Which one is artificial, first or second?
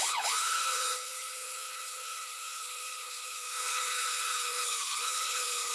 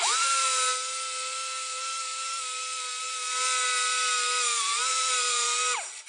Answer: first